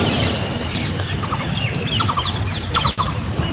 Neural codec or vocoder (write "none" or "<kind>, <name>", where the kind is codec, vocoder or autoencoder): vocoder, BigVGAN v2